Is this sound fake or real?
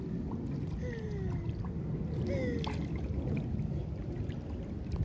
real